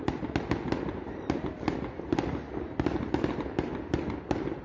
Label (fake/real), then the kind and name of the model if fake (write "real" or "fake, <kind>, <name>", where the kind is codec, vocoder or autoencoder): real